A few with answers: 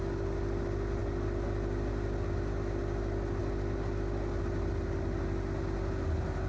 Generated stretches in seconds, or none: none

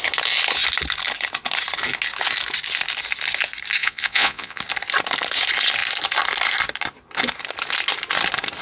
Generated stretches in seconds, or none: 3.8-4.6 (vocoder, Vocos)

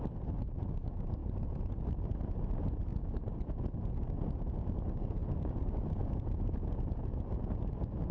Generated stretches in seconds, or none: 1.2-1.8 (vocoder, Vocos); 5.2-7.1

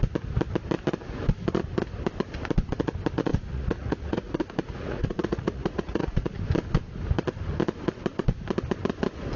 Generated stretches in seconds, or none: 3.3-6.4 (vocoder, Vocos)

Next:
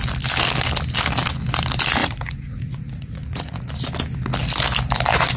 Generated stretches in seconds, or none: 2.0-3.7 (vocoder, Vocos)

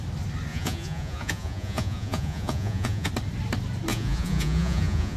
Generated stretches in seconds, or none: 0.5-3.1 (vocoder, Vocos); 3.9-5.2

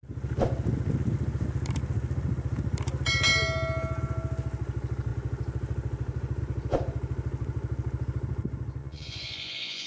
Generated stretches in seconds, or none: 8.8-9.9 (vocoder, Vocos)